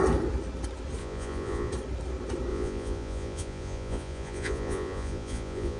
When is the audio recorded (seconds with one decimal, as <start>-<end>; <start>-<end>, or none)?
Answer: 0.0-1.0; 1.7-2.5